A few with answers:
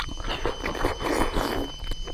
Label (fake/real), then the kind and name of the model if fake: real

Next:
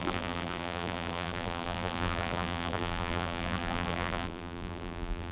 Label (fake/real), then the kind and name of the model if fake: fake, vocoder, BigVGAN v2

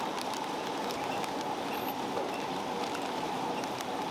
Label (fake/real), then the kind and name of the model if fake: real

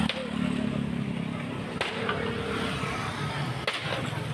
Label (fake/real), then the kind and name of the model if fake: real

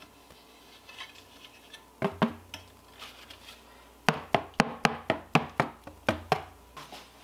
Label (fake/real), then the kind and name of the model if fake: real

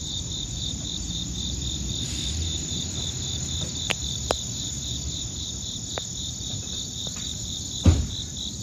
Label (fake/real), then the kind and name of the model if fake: fake, vocoder, BigVGAN v2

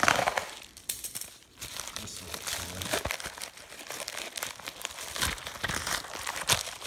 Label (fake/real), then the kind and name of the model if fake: fake, vocoder, BigVGAN v2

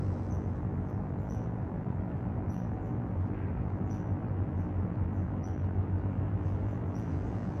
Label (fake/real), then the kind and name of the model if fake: fake, vocoder, BigVGAN v2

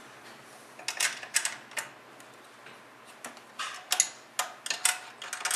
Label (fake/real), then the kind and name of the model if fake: real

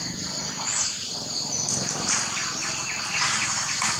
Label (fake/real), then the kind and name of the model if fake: real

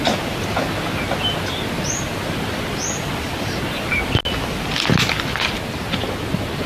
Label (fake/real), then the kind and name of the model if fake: real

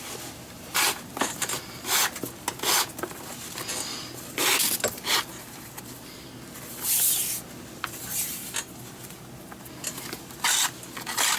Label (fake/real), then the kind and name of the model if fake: real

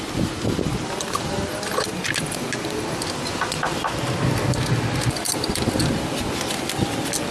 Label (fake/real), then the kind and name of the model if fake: real